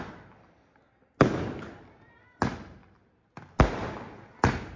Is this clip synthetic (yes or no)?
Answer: no